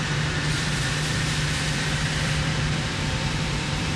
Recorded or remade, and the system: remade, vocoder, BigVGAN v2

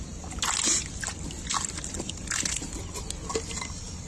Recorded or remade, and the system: recorded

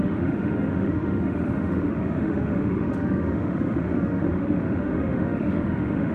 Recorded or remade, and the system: remade, autoencoder, DAC-VAE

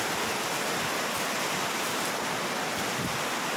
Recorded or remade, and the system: recorded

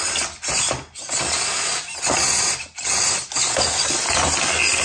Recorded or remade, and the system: recorded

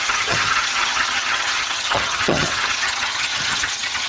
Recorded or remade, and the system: remade, vocoder, HiFi-GAN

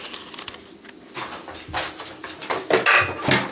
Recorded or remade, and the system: recorded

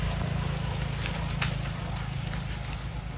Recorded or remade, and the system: recorded